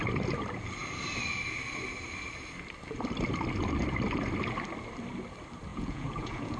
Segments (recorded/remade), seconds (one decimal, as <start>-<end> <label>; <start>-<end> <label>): 0.0-5.7 recorded; 5.7-6.6 remade